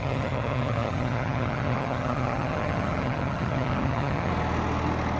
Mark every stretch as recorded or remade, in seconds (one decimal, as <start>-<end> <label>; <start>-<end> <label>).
0.0-4.3 remade; 4.3-5.2 recorded